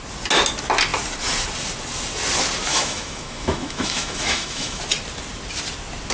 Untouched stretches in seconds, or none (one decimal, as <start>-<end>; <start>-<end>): 0.0-2.7; 4.8-6.1